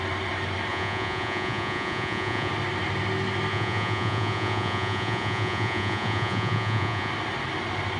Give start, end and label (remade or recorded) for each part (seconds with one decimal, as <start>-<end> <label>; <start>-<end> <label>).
0.0-0.7 recorded; 0.7-2.5 remade; 2.5-3.5 recorded; 3.5-7.1 remade; 7.1-8.0 recorded